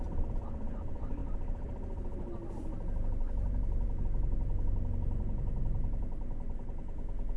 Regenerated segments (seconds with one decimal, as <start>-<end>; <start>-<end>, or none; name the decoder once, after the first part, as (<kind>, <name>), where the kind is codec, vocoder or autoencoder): none